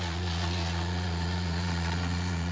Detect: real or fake fake